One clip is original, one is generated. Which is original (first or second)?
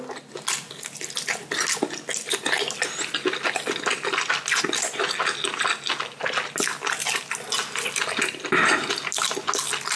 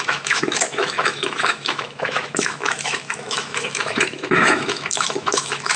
first